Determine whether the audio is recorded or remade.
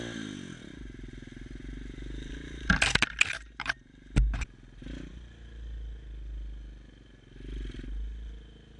recorded